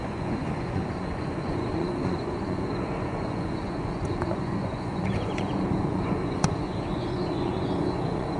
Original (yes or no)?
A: no